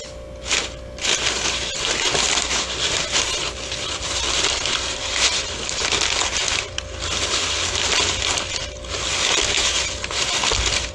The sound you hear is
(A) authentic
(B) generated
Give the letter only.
A